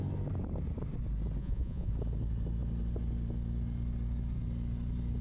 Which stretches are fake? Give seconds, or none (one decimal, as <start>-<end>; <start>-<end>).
1.4-1.9